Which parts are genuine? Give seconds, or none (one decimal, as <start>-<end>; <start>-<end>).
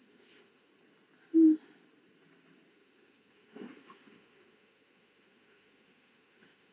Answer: 0.7-2.7